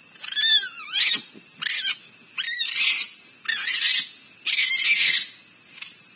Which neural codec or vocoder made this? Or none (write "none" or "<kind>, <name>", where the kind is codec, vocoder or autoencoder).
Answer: none